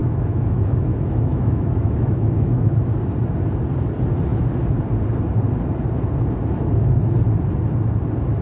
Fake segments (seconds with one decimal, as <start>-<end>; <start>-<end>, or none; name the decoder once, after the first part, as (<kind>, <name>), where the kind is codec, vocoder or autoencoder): 0.0-2.8 (autoencoder, DAC-VAE)